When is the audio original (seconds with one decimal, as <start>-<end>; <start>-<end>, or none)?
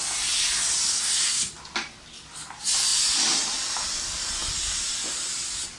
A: 0.0-0.9; 1.5-5.8